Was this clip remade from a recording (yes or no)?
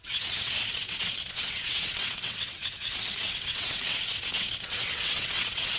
yes